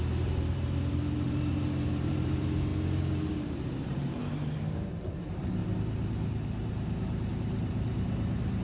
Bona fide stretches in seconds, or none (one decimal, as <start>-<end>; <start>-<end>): 2.7-3.5; 4.2-5.0; 5.6-7.3